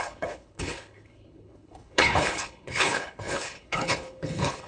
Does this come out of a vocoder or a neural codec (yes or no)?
yes